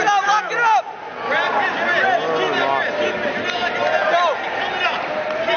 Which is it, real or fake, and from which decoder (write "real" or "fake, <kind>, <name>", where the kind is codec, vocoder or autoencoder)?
real